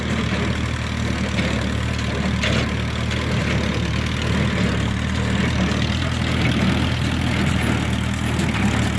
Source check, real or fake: real